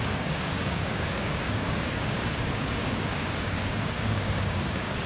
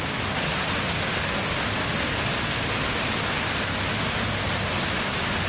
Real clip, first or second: second